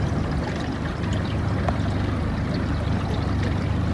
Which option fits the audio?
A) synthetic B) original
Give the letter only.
B